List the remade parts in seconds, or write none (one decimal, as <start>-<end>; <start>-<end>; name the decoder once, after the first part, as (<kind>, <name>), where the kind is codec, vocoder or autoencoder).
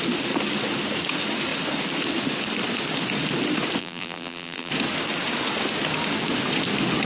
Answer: 3.8-4.7 (vocoder, BigVGAN v2)